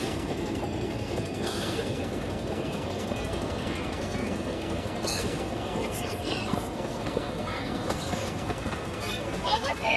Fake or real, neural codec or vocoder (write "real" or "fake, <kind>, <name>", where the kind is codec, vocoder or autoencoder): fake, codec, SNAC